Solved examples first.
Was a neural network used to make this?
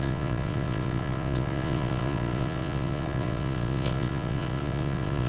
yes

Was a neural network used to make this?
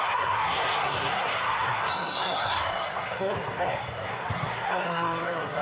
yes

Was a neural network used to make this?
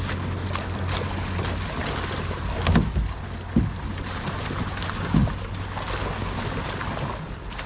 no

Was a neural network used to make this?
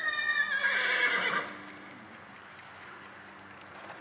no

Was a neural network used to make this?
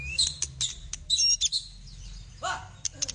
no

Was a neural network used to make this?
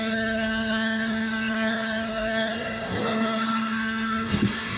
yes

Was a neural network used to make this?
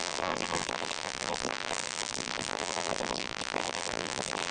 yes